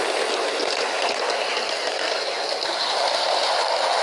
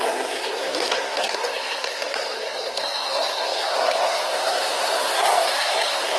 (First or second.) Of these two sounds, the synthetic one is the second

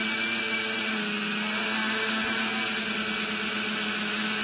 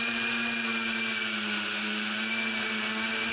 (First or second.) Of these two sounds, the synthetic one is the second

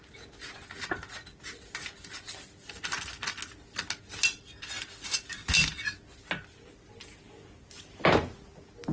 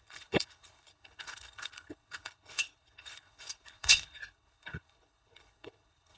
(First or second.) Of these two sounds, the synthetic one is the second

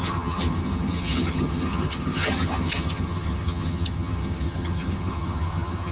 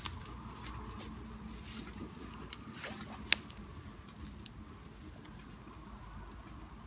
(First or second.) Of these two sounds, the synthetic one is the first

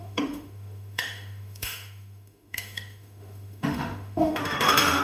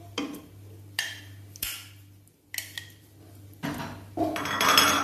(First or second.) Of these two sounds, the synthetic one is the first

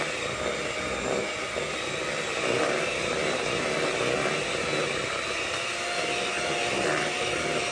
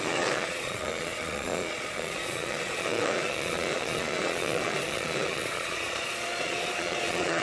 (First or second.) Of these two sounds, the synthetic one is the second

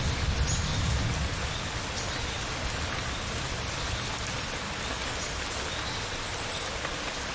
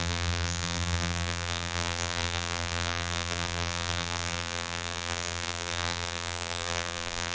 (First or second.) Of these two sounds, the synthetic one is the second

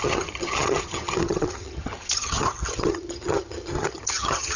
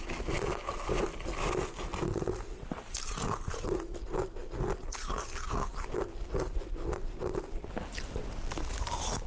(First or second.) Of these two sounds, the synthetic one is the first